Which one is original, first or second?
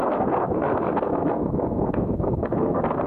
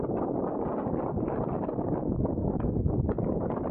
second